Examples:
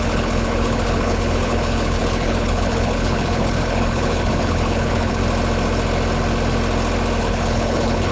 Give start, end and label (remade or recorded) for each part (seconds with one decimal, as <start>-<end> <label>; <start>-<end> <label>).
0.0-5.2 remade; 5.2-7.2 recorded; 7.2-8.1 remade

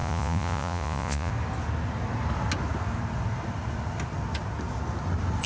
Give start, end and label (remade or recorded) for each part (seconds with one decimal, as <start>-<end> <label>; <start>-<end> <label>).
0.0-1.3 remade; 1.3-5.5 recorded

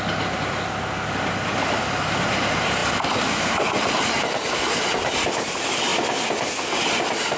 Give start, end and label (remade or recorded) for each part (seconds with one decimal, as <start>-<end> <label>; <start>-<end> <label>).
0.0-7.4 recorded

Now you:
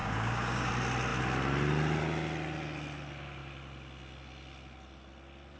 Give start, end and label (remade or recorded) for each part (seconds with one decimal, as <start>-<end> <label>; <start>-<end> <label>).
0.0-0.7 remade; 0.7-5.6 recorded